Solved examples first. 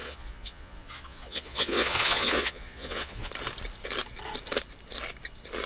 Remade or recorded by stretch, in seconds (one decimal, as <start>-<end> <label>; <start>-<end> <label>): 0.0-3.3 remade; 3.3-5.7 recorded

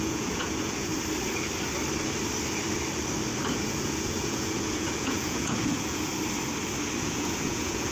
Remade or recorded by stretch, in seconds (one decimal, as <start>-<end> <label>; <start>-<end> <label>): 0.0-0.9 remade; 0.9-3.5 recorded; 3.5-6.1 remade; 6.1-7.0 recorded; 7.0-7.9 remade

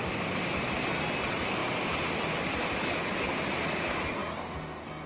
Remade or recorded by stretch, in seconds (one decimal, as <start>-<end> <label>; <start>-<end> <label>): 0.0-2.8 recorded; 2.8-3.3 remade; 3.3-5.1 recorded

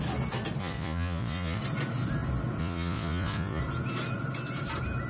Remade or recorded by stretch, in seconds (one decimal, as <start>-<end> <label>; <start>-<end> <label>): 0.0-0.6 recorded; 0.6-1.6 remade; 1.6-2.6 recorded; 2.6-3.6 remade; 3.6-5.1 recorded